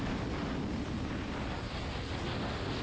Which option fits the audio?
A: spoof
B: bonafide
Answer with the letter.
B